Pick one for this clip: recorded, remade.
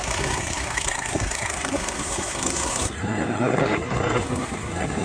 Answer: remade